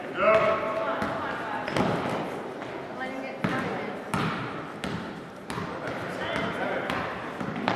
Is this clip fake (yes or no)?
no